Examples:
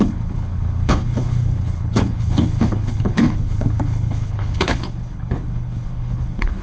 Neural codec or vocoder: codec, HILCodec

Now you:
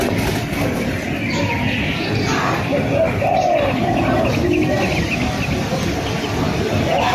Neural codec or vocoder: none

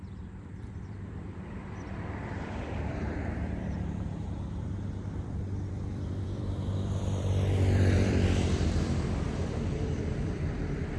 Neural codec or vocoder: vocoder, BigVGAN v2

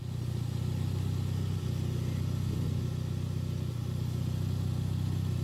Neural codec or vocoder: none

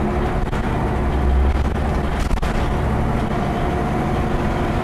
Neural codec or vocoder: none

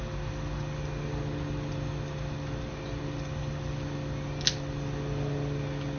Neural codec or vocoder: none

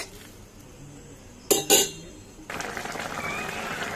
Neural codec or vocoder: none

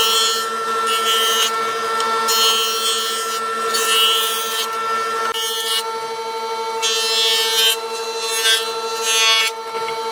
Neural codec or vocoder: none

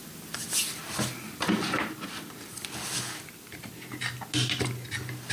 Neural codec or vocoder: none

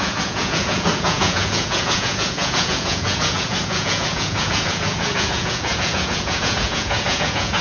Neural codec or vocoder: vocoder, Vocos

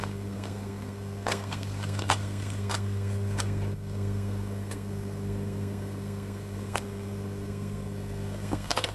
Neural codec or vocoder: codec, SNAC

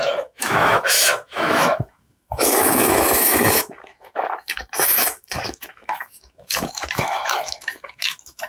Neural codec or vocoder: autoencoder, DAC-VAE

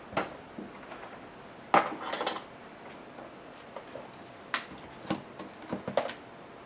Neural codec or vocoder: none